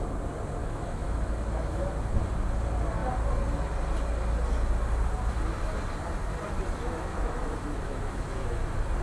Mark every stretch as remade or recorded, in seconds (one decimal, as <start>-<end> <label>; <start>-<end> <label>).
0.0-0.6 recorded; 0.6-1.9 remade; 1.9-7.1 recorded; 7.1-8.6 remade; 8.6-9.0 recorded